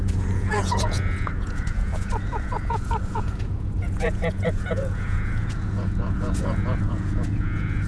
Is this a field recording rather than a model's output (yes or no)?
no